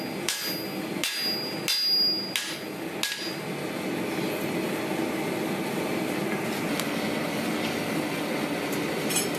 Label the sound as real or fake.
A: real